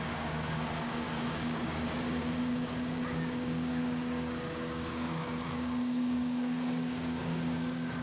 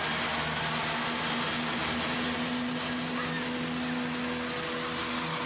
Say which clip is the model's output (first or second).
first